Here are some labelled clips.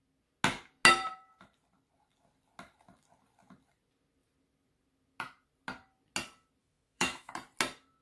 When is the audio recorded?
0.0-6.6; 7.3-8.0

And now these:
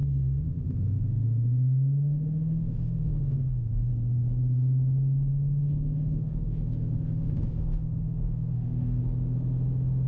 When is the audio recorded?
3.9-5.3; 9.0-10.1